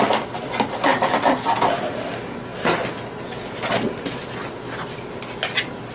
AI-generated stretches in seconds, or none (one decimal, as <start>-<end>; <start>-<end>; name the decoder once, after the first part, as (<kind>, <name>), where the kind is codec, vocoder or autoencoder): none

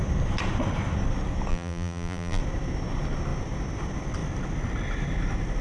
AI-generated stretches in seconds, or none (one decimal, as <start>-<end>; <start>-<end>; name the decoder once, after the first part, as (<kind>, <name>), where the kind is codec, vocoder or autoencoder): 1.5-2.4 (vocoder, BigVGAN v2)

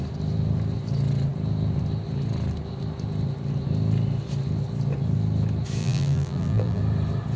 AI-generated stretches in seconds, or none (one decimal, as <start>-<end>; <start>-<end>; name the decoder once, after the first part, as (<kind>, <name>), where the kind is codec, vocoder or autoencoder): 5.8-6.8 (vocoder, BigVGAN v2)

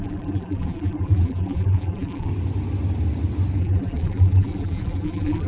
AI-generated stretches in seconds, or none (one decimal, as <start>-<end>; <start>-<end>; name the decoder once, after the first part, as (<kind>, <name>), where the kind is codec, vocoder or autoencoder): 0.0-2.3 (vocoder, BigVGAN v2); 3.6-5.5

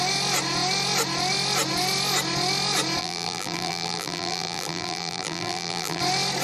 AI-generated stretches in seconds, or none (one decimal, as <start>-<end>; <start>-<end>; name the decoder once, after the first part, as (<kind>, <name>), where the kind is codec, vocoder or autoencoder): 3.0-6.0 (vocoder, BigVGAN v2)

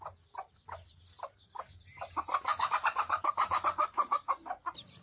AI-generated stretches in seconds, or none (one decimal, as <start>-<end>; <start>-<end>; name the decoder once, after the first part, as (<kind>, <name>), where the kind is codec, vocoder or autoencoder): 2.5-4.5 (vocoder, BigVGAN v2)

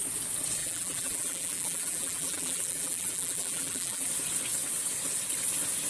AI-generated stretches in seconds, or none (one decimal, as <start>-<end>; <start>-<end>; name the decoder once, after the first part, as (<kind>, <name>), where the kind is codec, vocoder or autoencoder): 0.6-4.1 (vocoder, BigVGAN v2)